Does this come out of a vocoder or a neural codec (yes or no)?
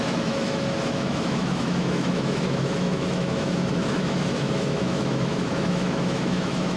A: yes